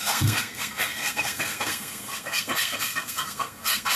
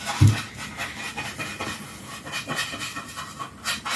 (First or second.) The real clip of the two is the second